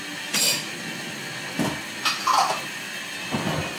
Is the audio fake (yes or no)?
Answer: no